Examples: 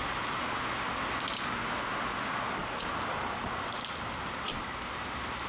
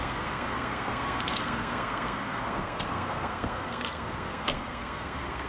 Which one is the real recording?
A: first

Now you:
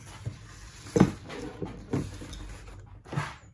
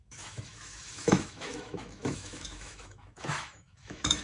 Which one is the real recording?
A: first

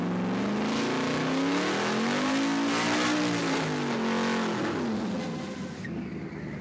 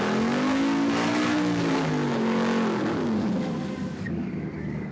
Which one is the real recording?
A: first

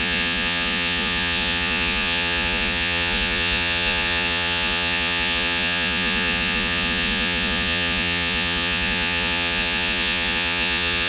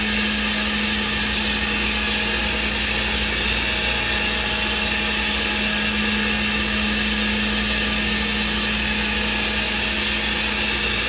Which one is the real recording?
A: second